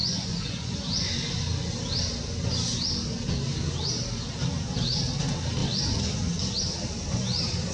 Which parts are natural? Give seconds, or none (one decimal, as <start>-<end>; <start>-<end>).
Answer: 1.1-7.7